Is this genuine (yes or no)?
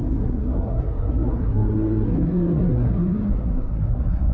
no